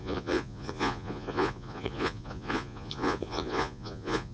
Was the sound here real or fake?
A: fake